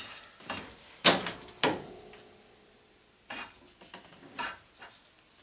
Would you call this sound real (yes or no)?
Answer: yes